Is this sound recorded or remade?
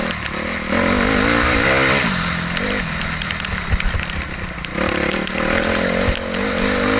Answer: recorded